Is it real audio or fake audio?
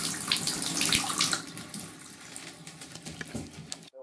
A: real